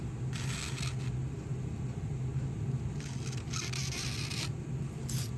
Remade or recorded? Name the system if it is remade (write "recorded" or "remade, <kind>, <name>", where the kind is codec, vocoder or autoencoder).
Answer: recorded